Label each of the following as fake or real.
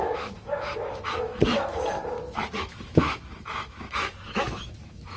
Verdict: fake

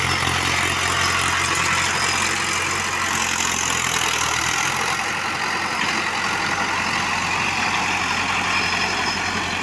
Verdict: real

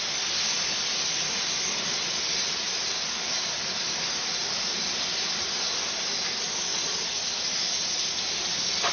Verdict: real